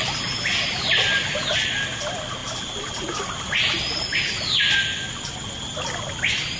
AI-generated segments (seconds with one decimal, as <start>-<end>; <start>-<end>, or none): none